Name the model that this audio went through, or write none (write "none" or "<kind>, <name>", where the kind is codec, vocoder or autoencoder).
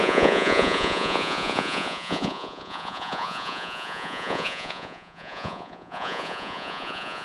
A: vocoder, Vocos